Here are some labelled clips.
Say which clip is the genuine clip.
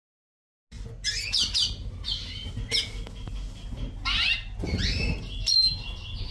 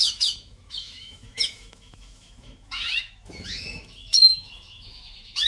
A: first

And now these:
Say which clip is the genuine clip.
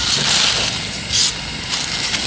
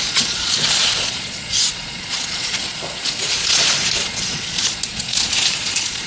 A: first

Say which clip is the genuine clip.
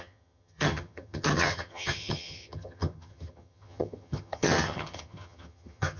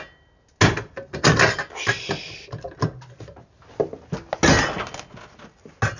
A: second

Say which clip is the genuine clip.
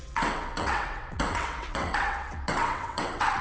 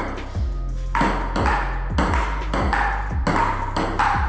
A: second